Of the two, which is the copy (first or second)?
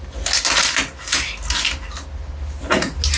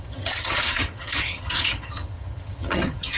second